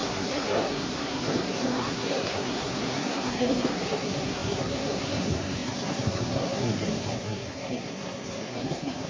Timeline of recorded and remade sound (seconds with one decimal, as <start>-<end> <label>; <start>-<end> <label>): 0.0-9.1 remade